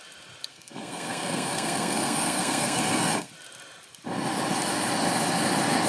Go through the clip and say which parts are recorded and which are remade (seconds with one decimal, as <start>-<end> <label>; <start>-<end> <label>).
0.0-0.5 recorded; 0.5-3.3 remade; 3.3-5.9 recorded